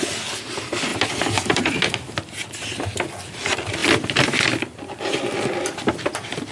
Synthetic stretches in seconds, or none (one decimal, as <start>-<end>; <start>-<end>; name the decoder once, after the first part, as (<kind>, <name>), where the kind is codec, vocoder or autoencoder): none